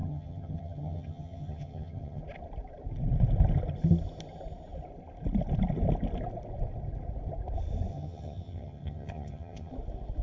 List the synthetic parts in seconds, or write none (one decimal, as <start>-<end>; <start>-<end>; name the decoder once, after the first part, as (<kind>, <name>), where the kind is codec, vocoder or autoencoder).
0.0-2.2 (vocoder, HiFi-GAN); 7.9-9.7